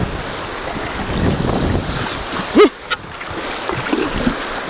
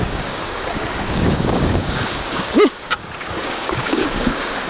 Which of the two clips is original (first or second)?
first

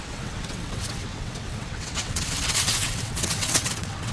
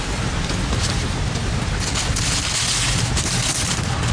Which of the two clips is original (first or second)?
second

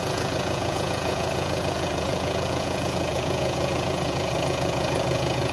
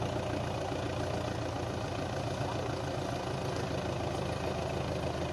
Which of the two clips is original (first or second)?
second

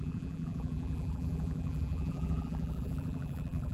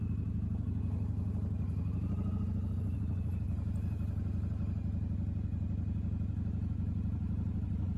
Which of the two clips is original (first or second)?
second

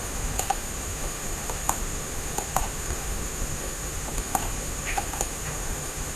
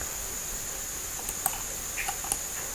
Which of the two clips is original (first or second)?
second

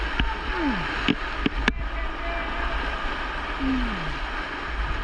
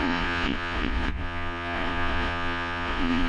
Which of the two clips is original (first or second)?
first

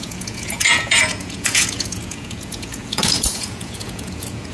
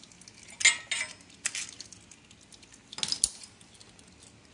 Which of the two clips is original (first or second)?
second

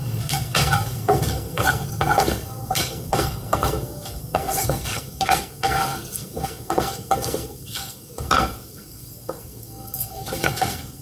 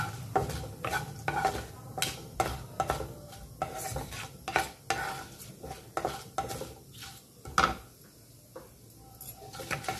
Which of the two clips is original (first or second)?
second